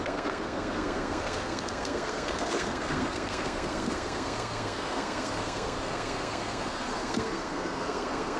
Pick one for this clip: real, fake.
fake